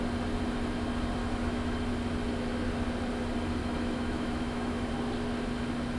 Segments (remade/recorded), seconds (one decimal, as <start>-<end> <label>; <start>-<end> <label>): 0.0-1.2 recorded; 1.2-1.9 remade; 1.9-3.6 recorded; 3.6-4.9 remade; 4.9-6.0 recorded